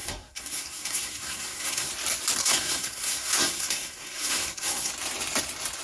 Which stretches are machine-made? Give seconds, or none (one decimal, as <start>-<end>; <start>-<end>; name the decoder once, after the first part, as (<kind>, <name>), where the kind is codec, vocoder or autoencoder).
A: 0.0-1.9 (codec, SNAC); 2.4-4.9